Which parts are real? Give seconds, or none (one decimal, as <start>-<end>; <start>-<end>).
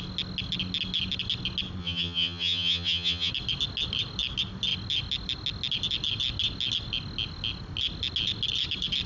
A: 0.0-1.8; 3.3-9.1